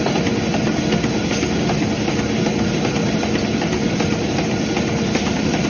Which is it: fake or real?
real